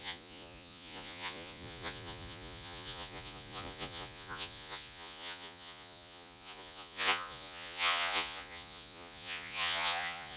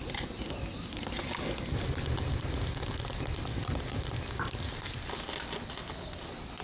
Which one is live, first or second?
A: second